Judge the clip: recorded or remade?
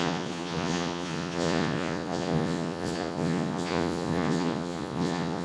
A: remade